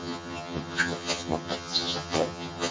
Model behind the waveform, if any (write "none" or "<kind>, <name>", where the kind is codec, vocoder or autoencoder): vocoder, HiFi-GAN